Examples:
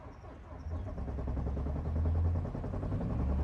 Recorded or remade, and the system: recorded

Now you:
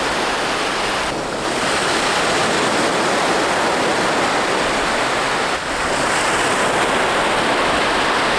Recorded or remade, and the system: recorded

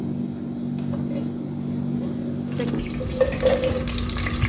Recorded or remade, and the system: recorded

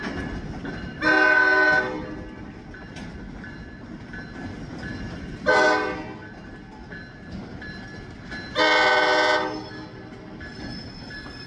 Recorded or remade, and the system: recorded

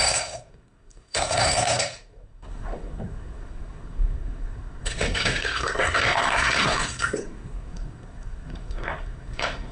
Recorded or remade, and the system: remade, codec, SNAC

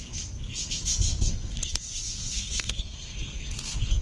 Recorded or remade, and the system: remade, codec, SNAC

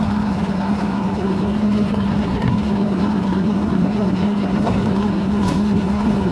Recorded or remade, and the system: remade, codec, SNAC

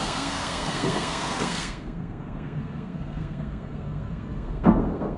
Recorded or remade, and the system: remade, codec, SNAC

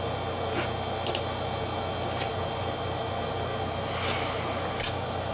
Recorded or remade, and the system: recorded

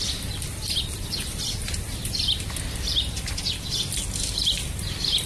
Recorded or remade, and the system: recorded